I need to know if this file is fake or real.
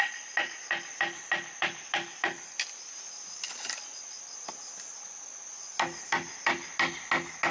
real